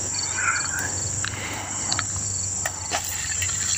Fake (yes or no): no